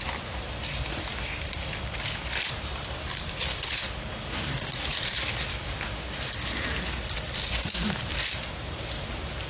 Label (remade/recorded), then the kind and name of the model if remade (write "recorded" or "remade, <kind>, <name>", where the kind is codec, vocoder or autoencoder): recorded